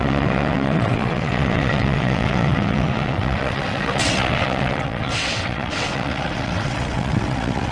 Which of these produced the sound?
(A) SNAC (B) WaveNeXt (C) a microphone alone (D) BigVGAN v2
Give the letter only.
B